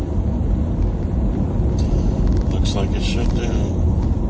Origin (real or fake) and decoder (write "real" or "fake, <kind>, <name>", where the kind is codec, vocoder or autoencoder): fake, vocoder, BigVGAN v2